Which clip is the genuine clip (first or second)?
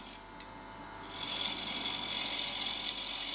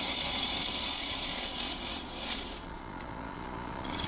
first